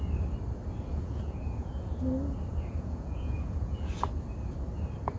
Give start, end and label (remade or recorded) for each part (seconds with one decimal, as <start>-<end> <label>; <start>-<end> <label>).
0.0-0.9 recorded; 0.9-1.9 remade; 1.9-2.5 recorded; 2.5-3.9 remade; 3.9-5.2 recorded